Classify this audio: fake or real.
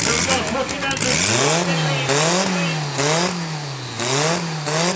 real